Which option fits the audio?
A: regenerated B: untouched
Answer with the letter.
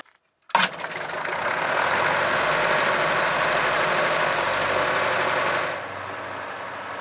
B